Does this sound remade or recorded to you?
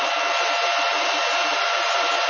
recorded